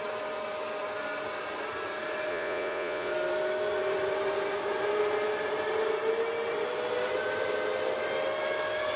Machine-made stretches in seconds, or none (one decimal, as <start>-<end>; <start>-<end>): 2.3-3.1